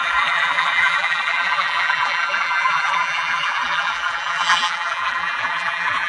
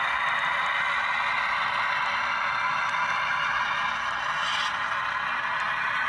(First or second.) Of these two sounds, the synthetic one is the first